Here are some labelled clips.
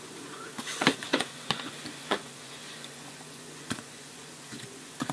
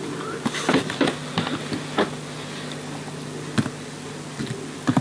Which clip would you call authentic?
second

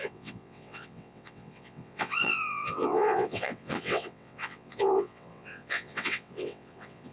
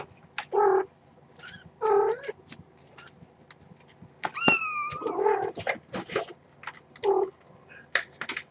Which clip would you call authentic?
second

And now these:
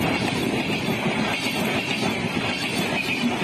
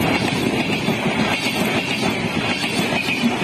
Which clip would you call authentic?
second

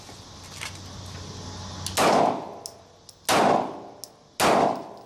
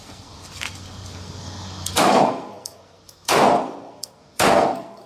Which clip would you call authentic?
first